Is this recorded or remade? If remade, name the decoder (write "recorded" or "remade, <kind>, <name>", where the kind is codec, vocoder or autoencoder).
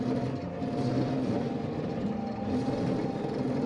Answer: remade, vocoder, BigVGAN v2